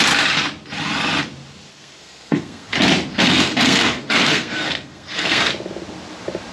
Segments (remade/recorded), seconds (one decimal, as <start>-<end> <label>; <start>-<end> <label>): 0.0-1.7 recorded; 1.7-2.7 remade; 2.7-3.1 recorded; 3.1-5.4 remade; 5.4-6.5 recorded